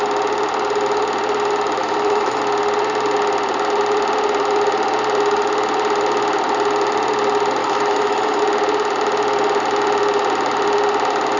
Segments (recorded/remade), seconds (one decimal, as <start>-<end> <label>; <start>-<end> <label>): 0.0-1.8 recorded; 1.8-2.4 remade; 2.4-7.6 recorded; 7.6-8.4 remade; 8.4-11.4 recorded